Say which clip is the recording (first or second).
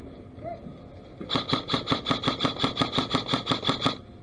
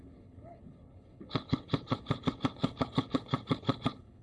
first